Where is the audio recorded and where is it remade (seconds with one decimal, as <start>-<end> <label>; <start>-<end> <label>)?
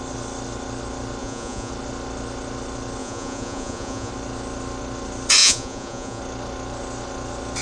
0.0-1.2 recorded; 1.2-1.7 remade; 1.7-3.0 recorded; 3.0-4.1 remade; 4.1-5.4 recorded; 5.4-6.2 remade; 6.2-7.6 recorded